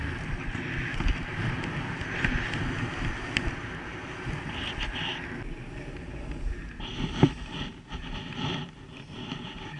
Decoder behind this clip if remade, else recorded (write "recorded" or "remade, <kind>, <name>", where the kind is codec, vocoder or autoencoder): recorded